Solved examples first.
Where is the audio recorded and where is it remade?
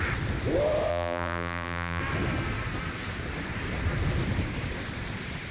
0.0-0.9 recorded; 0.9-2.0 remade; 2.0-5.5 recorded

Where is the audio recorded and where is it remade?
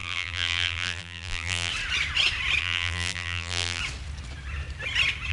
0.0-1.7 remade; 1.7-2.6 recorded; 2.6-3.8 remade; 3.8-5.3 recorded